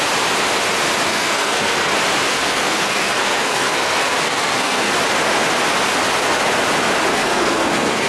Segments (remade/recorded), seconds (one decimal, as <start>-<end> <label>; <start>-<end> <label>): 0.0-1.1 recorded; 1.1-1.9 remade; 1.9-2.3 recorded; 2.3-4.9 remade; 4.9-7.1 recorded; 7.1-8.1 remade